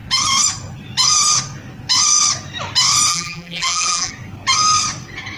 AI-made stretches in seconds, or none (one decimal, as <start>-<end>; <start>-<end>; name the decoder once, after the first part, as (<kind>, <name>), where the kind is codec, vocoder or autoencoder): 3.1-4.1 (vocoder, BigVGAN v2)